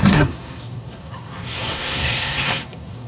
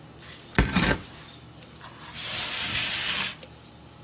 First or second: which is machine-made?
first